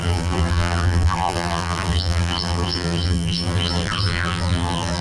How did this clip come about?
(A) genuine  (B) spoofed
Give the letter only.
B